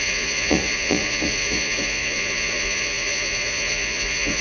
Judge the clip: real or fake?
fake